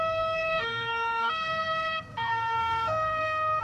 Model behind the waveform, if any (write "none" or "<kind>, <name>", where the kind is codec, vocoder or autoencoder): codec, SNAC